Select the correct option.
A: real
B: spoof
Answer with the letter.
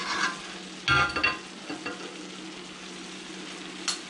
A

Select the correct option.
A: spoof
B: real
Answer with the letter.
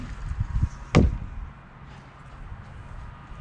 B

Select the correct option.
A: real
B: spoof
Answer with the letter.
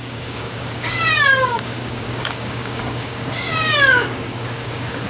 B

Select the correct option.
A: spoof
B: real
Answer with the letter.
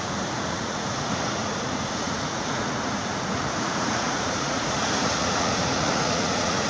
A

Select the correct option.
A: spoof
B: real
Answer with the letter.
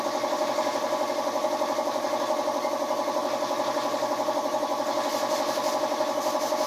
B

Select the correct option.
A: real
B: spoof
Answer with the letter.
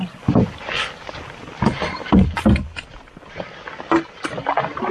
A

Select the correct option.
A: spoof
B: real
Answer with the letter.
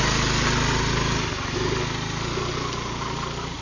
B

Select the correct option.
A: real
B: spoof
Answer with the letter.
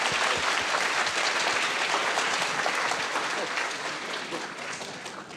A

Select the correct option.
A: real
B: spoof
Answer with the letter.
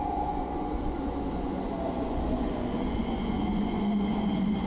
B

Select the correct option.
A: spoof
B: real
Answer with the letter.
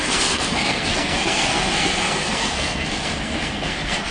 A